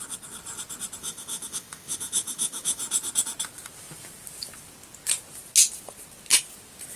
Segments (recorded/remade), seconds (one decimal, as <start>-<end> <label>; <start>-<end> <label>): 0.0-1.0 recorded; 1.0-2.8 remade; 2.8-7.0 recorded